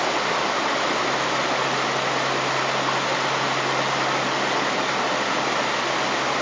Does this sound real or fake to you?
real